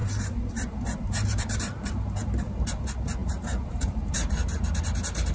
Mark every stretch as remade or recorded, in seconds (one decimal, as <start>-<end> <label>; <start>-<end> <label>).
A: 0.0-2.5 remade; 2.5-3.2 recorded; 3.2-4.0 remade; 4.0-5.3 recorded